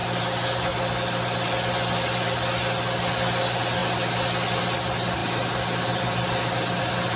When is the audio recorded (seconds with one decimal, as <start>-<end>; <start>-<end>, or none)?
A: 0.0-7.2

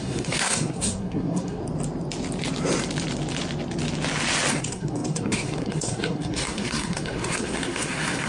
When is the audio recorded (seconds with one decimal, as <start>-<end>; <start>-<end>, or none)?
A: 1.6-4.5

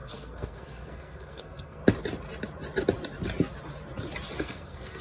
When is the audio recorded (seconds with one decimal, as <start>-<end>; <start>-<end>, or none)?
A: 1.8-4.4

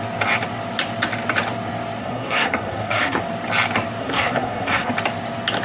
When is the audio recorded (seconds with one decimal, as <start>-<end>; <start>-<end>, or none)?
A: 0.0-2.0; 3.2-4.0; 4.9-5.6

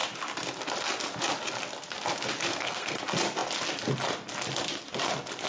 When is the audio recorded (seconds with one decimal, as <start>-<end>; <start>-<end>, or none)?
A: 0.0-2.5; 3.0-5.5

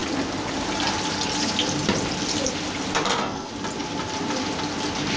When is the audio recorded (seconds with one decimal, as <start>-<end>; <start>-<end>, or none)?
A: 0.0-3.1; 3.5-5.2

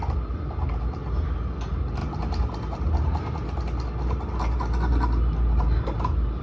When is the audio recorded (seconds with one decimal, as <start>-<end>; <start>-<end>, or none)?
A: 0.0-6.4